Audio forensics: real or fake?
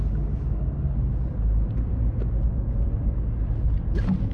real